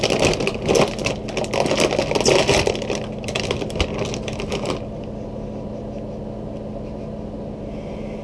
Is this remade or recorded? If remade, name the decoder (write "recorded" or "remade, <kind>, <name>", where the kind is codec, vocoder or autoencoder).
recorded